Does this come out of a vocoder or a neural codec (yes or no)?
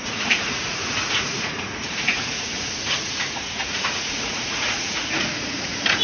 yes